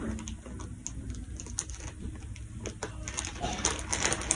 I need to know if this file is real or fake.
real